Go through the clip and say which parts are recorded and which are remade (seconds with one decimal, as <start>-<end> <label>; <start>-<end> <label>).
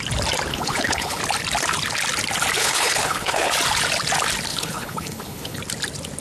0.0-0.5 recorded; 0.5-1.2 remade; 1.2-2.6 recorded; 2.6-3.5 remade; 3.5-4.5 recorded; 4.5-5.6 remade; 5.6-6.2 recorded